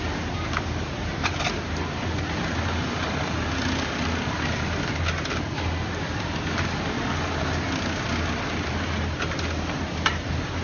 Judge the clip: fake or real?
real